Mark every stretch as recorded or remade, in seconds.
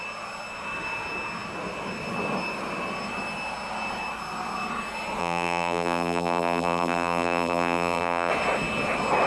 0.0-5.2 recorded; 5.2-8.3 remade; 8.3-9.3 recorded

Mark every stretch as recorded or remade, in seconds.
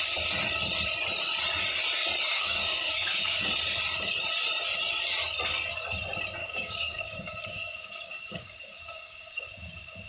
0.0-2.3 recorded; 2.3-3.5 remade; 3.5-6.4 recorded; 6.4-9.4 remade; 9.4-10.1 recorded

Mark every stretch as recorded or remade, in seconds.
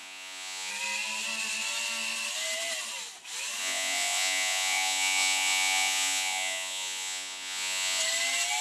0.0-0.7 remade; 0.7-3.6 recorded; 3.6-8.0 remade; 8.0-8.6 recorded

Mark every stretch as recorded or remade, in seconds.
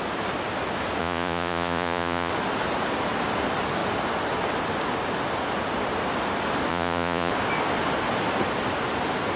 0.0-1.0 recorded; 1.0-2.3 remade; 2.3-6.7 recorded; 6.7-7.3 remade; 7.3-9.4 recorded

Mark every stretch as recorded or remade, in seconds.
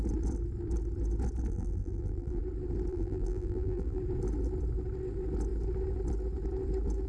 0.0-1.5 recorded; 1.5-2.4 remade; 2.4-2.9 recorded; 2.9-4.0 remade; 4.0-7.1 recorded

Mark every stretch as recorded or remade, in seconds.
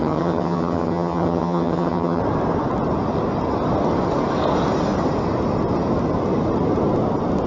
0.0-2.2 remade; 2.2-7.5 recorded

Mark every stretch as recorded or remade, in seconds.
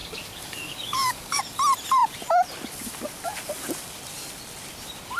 0.0-1.4 remade; 1.4-5.2 recorded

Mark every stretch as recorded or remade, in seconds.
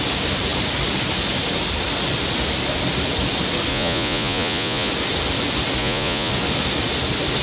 0.0-3.7 recorded; 3.7-4.9 remade; 4.9-5.8 recorded; 5.8-6.3 remade; 6.3-7.4 recorded